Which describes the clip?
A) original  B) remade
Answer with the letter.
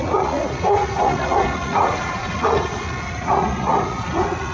B